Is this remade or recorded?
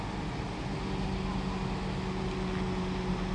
recorded